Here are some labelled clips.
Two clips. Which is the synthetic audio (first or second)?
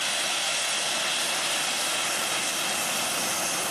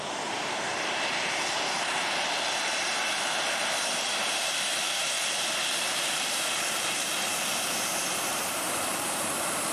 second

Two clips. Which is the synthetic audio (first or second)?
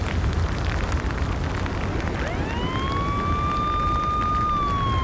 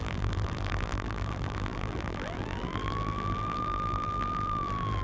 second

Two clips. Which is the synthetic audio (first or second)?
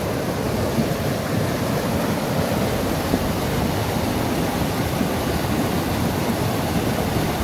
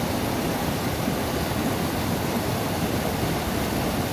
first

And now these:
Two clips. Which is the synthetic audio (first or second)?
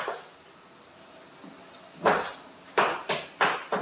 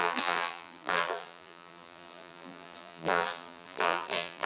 second